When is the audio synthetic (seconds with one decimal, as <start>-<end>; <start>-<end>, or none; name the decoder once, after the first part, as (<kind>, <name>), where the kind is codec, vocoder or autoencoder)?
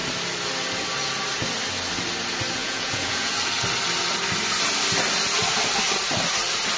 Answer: 2.6-3.3 (vocoder, Vocos)